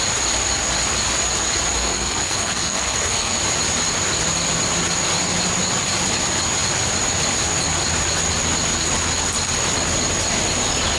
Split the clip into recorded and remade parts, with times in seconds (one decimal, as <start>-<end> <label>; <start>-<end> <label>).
0.0-1.8 recorded; 1.8-3.4 remade; 3.4-11.0 recorded